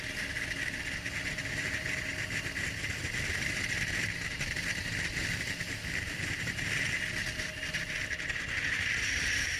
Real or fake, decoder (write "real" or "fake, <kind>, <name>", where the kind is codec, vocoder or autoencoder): real